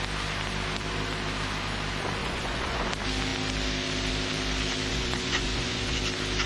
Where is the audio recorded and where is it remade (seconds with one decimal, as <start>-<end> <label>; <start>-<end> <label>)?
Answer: 0.0-2.2 recorded; 2.2-2.9 remade; 2.9-4.9 recorded; 4.9-6.0 remade; 6.0-6.5 recorded